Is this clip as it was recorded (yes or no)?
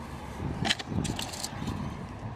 yes